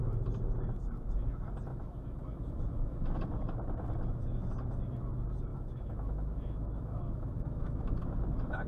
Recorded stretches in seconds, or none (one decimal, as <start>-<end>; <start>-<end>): 0.0-1.7; 3.2-5.5; 8.0-8.7